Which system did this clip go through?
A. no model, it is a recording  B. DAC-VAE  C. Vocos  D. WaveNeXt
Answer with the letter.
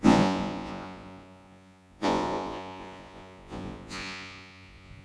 C